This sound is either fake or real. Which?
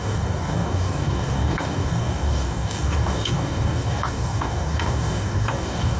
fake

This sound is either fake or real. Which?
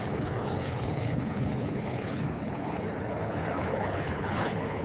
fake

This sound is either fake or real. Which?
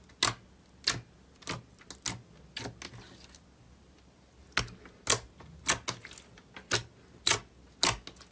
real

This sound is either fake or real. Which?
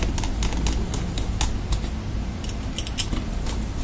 real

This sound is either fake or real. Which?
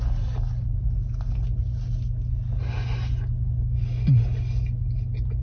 real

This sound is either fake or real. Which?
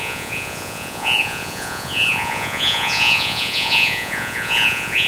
fake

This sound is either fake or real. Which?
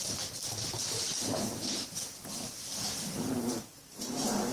fake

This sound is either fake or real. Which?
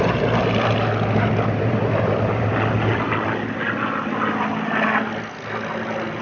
real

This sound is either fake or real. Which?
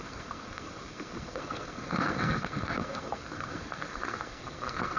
fake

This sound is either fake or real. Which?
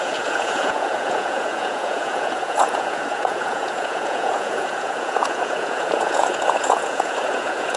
fake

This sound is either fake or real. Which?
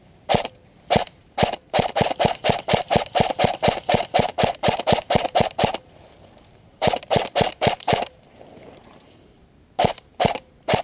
fake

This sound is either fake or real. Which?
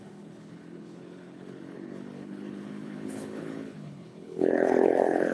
fake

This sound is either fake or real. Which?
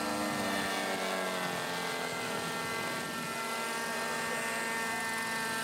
real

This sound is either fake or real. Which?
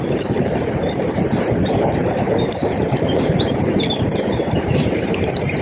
fake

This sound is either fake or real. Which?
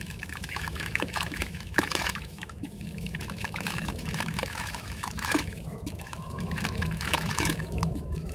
fake